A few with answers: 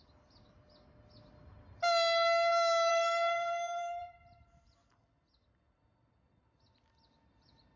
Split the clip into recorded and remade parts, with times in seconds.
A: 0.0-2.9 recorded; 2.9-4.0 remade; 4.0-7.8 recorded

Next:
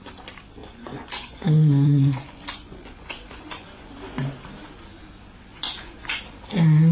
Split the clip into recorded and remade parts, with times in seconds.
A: 0.0-0.6 recorded; 0.6-3.9 remade; 3.9-5.5 recorded; 5.5-6.2 remade; 6.2-6.9 recorded

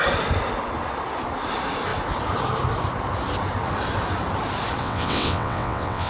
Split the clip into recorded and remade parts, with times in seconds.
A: 0.0-4.8 recorded; 4.8-6.1 remade

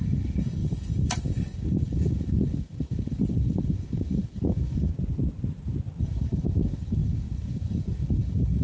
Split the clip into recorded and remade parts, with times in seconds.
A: 0.0-4.9 remade; 4.9-6.0 recorded; 6.0-8.6 remade

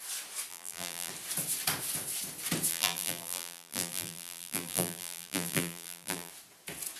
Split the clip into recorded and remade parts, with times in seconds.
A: 0.0-0.5 recorded; 0.5-1.1 remade; 1.1-2.7 recorded; 2.7-6.3 remade; 6.3-7.0 recorded